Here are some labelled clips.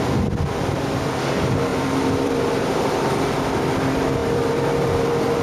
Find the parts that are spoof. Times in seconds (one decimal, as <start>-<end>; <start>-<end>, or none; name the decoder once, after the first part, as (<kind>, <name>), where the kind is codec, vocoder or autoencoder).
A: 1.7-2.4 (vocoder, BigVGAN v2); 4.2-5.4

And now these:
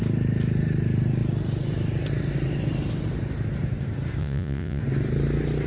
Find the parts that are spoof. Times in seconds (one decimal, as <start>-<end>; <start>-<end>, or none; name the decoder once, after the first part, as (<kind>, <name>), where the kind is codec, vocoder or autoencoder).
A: 4.2-4.8 (vocoder, Vocos)

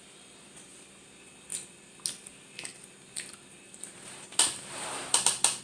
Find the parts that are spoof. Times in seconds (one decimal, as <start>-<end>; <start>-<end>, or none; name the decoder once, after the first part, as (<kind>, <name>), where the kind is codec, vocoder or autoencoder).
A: none